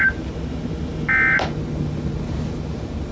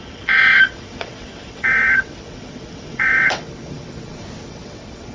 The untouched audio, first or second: first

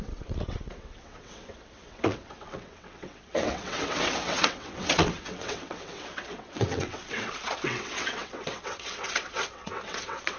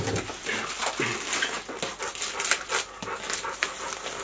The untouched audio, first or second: second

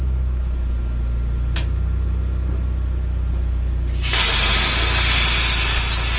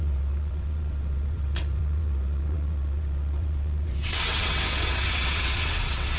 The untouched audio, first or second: first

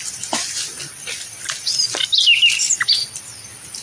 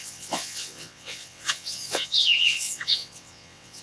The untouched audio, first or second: first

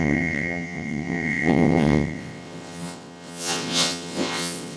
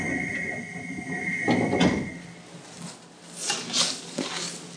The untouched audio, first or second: second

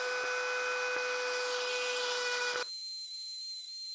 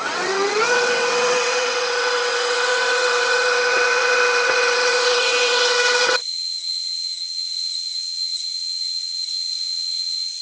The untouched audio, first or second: first